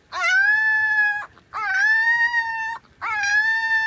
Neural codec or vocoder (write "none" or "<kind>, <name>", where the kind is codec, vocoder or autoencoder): none